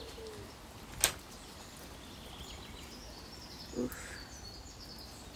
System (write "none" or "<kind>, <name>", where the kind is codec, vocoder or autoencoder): none